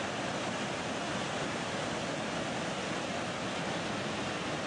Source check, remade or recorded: recorded